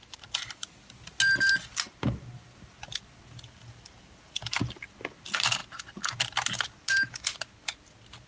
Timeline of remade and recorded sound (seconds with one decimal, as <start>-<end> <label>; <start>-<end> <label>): 0.0-0.9 remade; 0.9-8.3 recorded